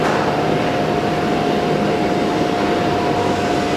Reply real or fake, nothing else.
real